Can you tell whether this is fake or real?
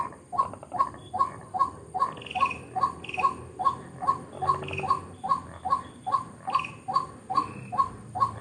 real